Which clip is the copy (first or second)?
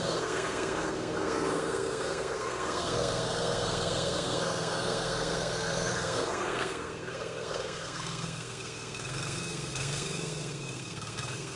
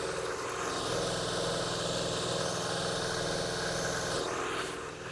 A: first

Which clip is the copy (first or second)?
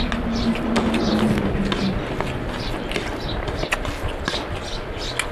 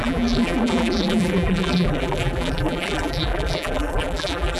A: second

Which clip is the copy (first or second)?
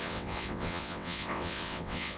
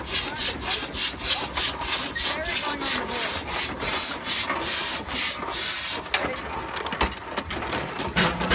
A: first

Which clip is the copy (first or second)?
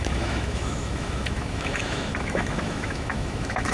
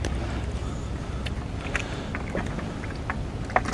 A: first